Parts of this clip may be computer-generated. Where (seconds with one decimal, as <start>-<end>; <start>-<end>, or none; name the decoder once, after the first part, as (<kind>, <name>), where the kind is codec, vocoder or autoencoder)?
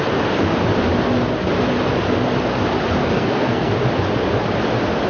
3.0-3.7 (codec, SNAC)